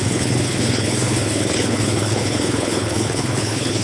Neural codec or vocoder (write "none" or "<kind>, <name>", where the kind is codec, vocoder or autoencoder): codec, HILCodec